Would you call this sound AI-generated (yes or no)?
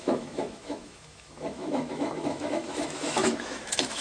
yes